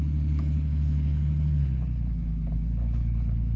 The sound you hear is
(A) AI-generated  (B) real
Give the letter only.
A